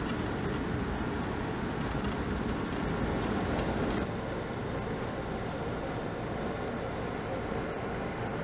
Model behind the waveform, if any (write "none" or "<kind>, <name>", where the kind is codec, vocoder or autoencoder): none